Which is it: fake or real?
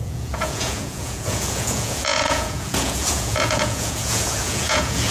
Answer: fake